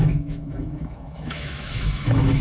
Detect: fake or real fake